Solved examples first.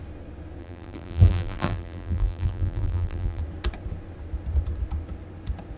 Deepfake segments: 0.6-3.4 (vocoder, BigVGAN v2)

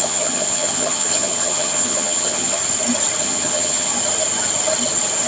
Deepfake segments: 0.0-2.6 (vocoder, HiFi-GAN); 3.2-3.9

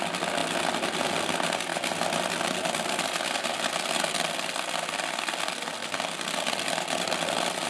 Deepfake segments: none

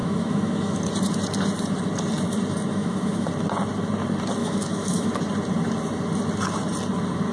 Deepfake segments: 0.0-0.8 (autoencoder, DAC-VAE); 2.7-3.3; 4.4-5.1